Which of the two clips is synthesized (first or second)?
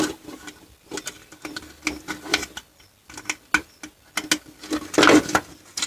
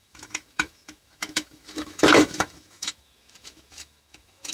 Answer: second